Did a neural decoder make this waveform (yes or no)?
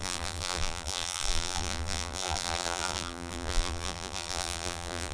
yes